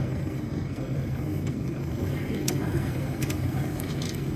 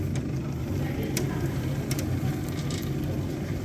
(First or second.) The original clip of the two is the second